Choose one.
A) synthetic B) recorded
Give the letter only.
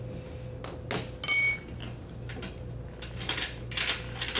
B